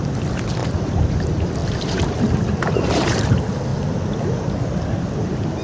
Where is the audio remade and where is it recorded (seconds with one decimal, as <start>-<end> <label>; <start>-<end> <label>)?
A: 0.0-1.6 recorded; 1.6-3.3 remade; 3.3-5.6 recorded